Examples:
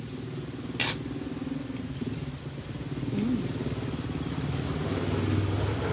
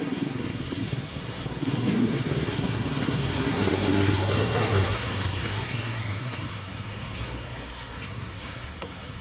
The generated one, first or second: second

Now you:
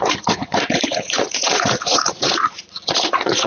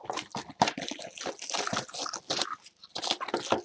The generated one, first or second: first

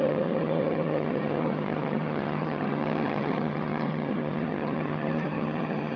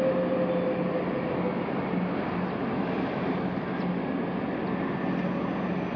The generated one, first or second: first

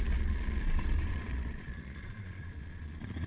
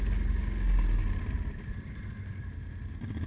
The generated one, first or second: first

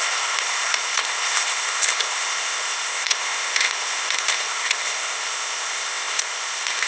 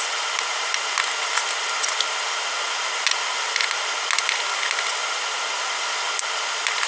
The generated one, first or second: first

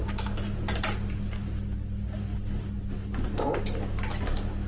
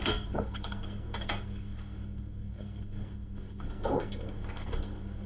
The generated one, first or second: second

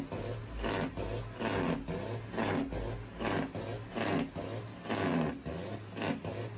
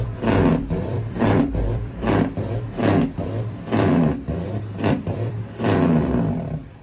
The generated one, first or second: second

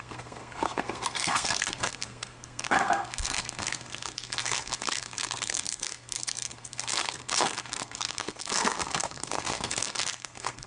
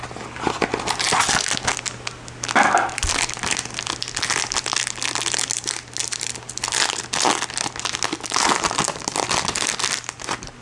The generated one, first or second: first